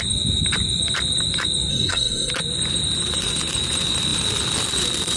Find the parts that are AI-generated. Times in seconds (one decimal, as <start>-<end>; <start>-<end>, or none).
1.7-2.3